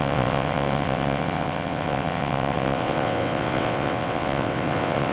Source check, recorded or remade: remade